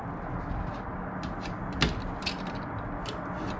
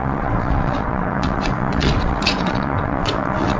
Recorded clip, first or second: first